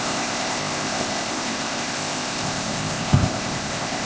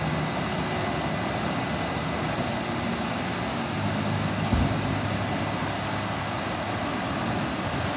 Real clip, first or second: second